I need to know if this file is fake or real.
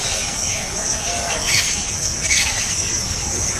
fake